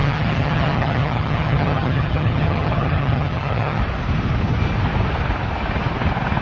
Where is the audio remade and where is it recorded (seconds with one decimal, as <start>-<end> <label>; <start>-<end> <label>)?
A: 0.0-3.8 remade; 3.8-6.4 recorded